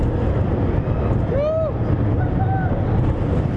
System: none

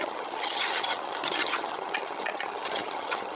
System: vocoder, HiFi-GAN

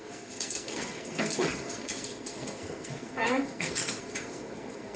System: codec, SNAC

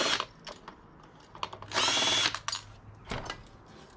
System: none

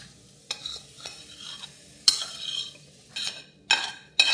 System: none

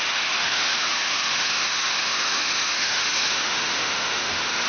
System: autoencoder, DAC-VAE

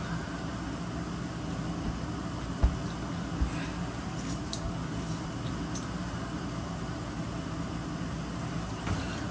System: none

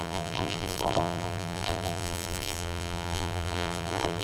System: vocoder, BigVGAN v2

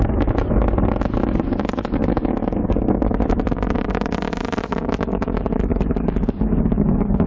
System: codec, DAC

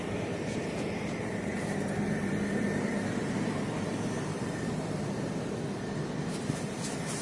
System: vocoder, BigVGAN v2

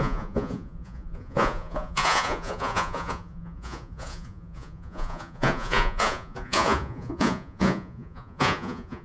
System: vocoder, Vocos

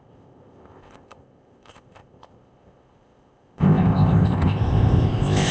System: codec, ZipCodec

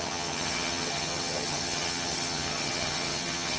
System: vocoder, HiFi-GAN